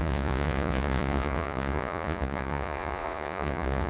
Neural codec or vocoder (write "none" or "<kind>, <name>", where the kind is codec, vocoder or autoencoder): vocoder, Vocos